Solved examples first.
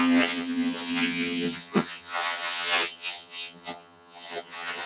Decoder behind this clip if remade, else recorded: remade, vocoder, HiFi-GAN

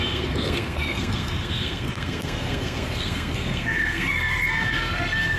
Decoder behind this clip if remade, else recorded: remade, codec, SNAC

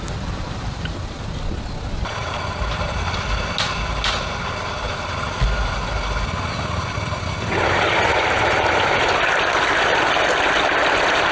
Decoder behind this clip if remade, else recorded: recorded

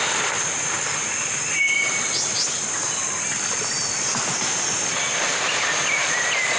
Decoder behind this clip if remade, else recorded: recorded